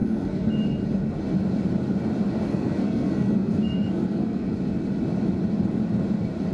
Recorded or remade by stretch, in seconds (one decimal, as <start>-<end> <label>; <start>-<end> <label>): 0.0-0.5 remade; 0.5-2.5 recorded; 2.5-4.5 remade; 4.5-6.5 recorded